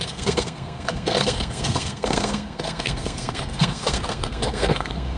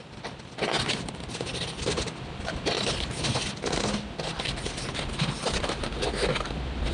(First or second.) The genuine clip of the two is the second